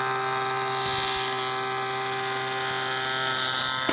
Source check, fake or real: real